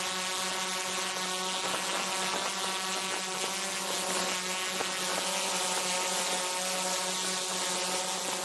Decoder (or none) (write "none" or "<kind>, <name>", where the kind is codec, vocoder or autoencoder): none